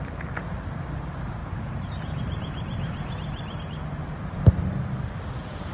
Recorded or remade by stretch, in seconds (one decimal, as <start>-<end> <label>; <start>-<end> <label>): 0.0-1.4 recorded; 1.4-3.6 remade; 3.6-5.7 recorded